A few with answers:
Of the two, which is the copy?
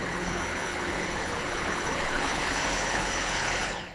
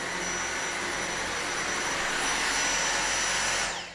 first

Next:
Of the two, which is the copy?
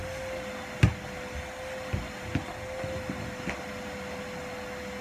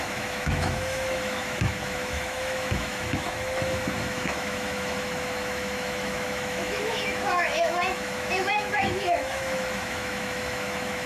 second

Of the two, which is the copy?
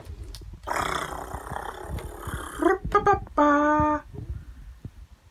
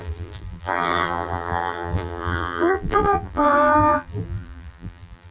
second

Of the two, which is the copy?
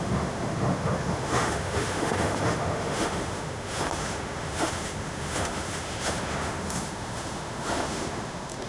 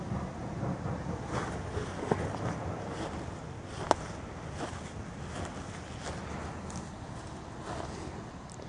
first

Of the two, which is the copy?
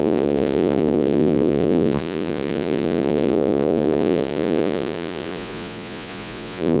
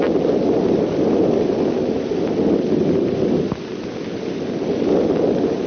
first